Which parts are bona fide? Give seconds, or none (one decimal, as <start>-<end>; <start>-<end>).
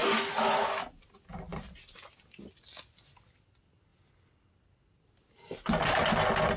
0.0-6.6